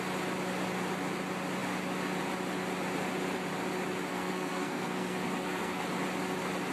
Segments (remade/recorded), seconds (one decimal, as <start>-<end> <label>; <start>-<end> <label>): 0.0-4.1 recorded; 4.1-5.8 remade; 5.8-6.7 recorded